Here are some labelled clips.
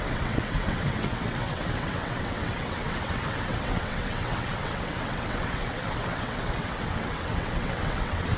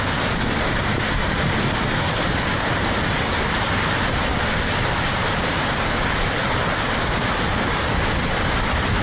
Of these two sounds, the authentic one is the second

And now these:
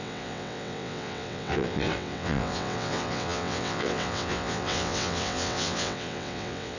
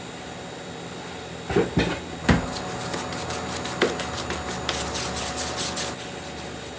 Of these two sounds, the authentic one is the second